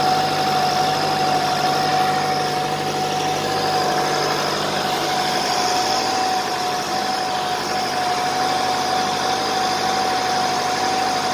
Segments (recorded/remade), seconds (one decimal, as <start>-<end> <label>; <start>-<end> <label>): 0.0-11.3 recorded